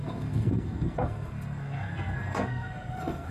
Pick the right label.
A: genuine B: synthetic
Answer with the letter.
B